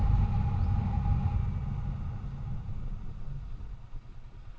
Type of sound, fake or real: real